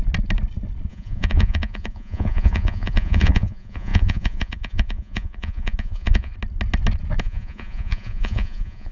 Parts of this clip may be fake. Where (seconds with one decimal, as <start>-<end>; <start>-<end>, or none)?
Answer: 0.9-6.3; 7.2-8.9